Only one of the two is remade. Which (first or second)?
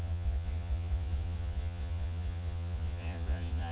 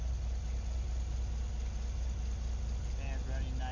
first